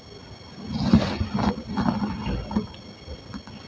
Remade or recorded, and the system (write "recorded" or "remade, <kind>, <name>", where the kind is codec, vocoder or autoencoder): recorded